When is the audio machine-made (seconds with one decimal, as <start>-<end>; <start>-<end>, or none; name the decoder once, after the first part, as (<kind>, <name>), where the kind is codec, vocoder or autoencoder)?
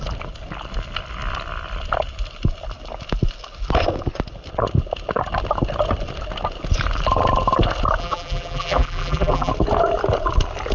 8.0-9.5 (vocoder, BigVGAN v2)